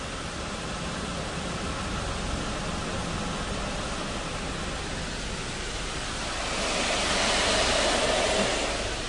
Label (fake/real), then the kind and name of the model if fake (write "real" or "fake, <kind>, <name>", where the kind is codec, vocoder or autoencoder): real